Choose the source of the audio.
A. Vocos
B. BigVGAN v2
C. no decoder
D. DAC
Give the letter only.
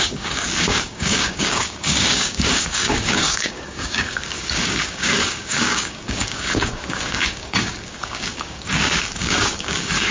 D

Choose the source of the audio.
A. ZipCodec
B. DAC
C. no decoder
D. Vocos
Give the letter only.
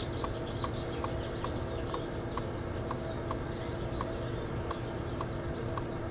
C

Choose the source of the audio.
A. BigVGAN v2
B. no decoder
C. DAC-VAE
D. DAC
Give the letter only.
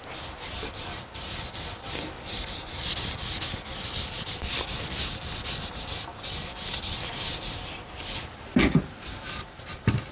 B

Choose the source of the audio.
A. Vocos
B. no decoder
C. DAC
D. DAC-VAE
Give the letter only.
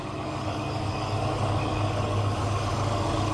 C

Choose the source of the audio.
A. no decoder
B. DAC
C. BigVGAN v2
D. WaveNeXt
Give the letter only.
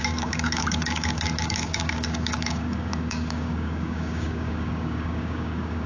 B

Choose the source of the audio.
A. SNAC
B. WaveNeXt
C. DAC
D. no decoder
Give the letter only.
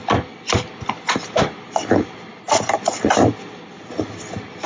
D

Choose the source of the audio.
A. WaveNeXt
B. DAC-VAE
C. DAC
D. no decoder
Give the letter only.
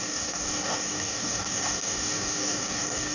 C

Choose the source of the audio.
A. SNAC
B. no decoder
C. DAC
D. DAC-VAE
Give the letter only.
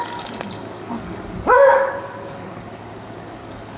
C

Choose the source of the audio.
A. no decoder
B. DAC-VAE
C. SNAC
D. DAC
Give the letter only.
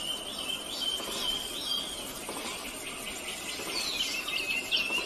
A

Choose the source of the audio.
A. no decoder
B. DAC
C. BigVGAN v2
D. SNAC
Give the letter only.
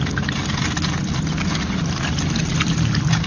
A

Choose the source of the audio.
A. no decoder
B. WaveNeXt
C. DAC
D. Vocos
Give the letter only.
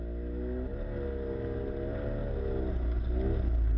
A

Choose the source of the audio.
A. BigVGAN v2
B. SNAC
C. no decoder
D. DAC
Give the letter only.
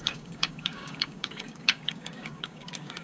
D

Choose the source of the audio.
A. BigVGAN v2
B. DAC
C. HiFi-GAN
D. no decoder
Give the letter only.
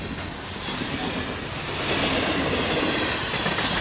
D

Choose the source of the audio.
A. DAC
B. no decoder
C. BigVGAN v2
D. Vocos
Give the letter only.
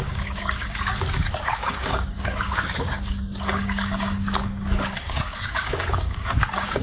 A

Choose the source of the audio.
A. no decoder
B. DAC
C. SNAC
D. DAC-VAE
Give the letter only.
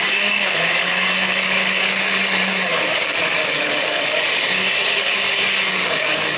B